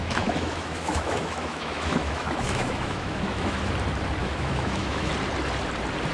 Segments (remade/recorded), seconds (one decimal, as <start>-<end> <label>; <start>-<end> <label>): 0.0-3.7 remade; 3.7-4.2 recorded; 4.2-5.1 remade; 5.1-6.1 recorded